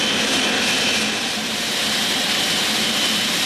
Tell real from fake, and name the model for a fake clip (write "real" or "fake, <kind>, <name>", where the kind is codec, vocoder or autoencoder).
real